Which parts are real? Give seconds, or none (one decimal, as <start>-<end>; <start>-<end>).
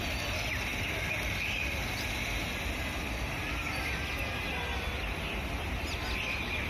0.0-6.7